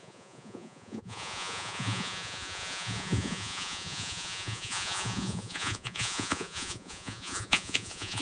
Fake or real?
fake